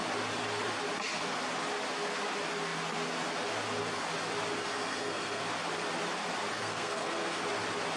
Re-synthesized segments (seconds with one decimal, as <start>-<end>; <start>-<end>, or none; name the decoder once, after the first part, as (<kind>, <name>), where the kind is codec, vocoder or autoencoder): 4.6-5.4 (codec, SNAC); 6.5-7.4